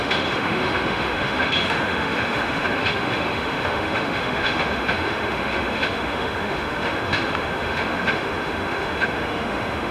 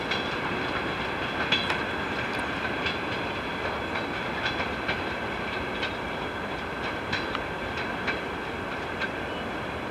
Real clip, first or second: second